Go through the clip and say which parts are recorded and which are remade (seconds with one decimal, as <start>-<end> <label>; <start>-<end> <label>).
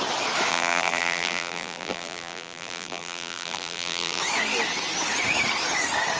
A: 0.0-0.5 recorded; 0.5-4.2 remade; 4.2-6.2 recorded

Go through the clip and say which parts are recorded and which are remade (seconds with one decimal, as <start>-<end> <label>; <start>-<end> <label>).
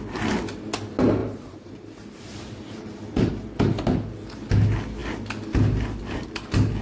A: 0.0-1.2 recorded; 1.2-3.3 remade; 3.3-6.8 recorded